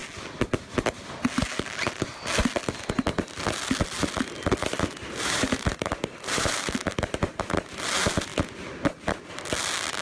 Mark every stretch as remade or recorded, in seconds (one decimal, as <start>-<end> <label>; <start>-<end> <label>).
0.0-4.6 recorded; 4.6-7.8 remade; 7.8-10.0 recorded